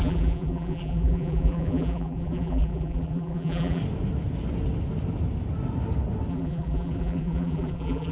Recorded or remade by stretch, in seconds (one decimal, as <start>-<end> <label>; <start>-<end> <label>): 0.0-3.8 remade; 3.8-6.3 recorded; 6.3-8.1 remade